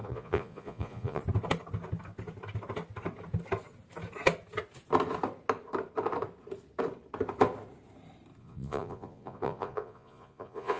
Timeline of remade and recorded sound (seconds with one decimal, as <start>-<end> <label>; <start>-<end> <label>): 0.0-1.2 remade; 1.2-8.4 recorded; 8.4-10.8 remade